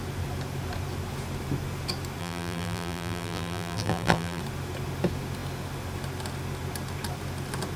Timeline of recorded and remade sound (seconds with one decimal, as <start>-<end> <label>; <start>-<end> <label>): 0.0-2.2 recorded; 2.2-4.4 remade; 4.4-7.8 recorded